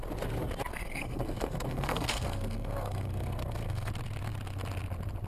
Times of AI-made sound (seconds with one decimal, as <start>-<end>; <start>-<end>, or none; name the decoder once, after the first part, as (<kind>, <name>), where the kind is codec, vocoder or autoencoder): 0.7-3.9 (codec, SNAC)